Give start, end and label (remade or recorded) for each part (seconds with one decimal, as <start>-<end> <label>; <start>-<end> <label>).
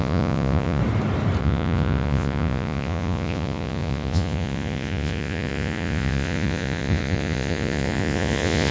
0.0-0.8 remade; 0.8-1.4 recorded; 1.4-8.7 remade